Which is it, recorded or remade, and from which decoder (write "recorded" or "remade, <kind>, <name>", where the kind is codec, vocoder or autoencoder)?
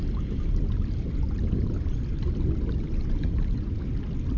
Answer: recorded